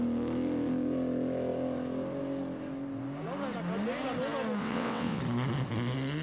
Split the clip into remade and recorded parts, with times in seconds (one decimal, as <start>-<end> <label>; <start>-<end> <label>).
0.0-4.6 recorded; 4.6-5.2 remade; 5.2-6.2 recorded